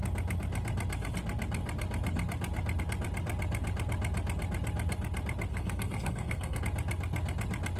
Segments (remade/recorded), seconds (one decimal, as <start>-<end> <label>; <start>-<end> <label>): 0.0-5.5 recorded; 5.5-6.6 remade; 6.6-7.8 recorded